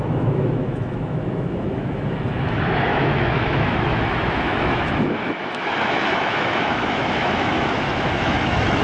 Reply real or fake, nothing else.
fake